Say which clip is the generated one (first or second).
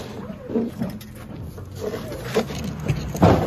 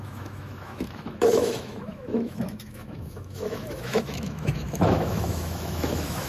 second